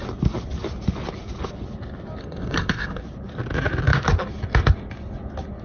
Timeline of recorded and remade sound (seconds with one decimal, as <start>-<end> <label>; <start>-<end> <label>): 0.0-2.2 recorded; 2.2-3.0 remade; 3.0-5.6 recorded